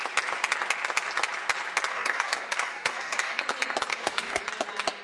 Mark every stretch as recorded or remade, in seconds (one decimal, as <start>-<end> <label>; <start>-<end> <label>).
0.0-1.9 recorded; 1.9-3.4 remade; 3.4-3.9 recorded; 3.9-4.4 remade; 4.4-5.0 recorded